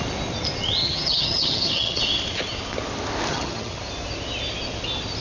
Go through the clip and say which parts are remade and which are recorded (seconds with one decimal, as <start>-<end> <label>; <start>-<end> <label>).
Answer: 0.0-0.8 recorded; 0.8-2.0 remade; 2.0-3.3 recorded; 3.3-3.8 remade; 3.8-5.2 recorded